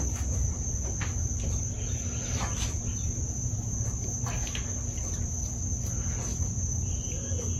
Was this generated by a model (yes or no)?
no